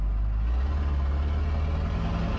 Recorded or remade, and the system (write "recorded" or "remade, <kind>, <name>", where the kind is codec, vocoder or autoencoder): recorded